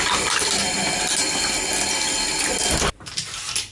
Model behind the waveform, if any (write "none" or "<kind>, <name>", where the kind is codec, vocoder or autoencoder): none